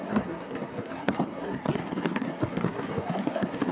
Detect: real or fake fake